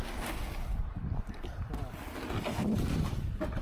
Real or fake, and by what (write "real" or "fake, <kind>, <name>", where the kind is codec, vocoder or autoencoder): real